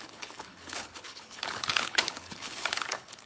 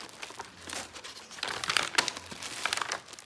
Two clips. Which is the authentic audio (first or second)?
second